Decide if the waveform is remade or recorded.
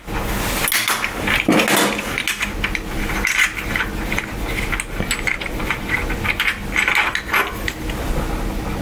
recorded